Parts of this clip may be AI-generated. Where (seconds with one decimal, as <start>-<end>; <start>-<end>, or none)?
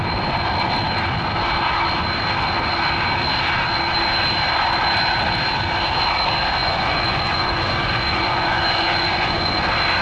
6.6-9.6